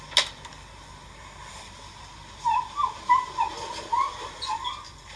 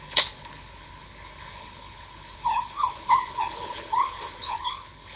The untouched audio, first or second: first